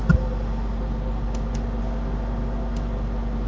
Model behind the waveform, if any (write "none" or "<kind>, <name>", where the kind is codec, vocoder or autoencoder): none